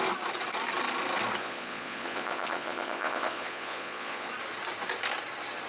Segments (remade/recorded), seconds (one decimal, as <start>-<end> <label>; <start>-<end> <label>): 0.0-1.4 recorded; 1.4-4.3 remade; 4.3-5.7 recorded